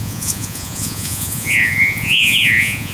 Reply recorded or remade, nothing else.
remade